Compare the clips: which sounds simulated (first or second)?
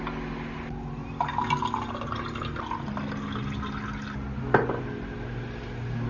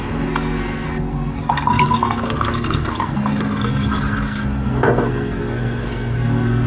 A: second